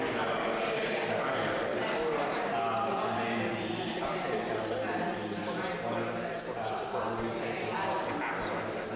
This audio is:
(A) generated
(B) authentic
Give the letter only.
B